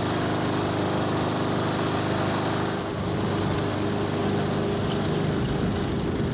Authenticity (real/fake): real